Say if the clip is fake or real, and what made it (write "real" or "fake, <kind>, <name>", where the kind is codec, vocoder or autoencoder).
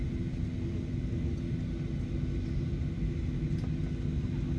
real